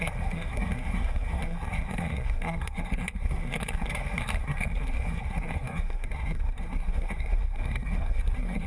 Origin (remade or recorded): remade